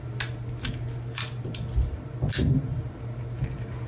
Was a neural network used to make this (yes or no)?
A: no